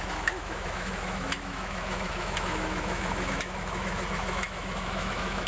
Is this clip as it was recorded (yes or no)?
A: no